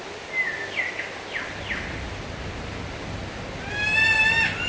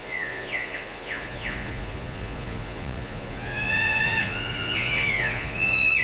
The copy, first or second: second